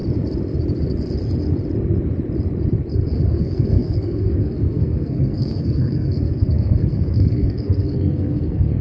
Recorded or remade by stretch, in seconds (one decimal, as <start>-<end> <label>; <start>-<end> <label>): 0.0-2.9 recorded; 2.9-8.8 remade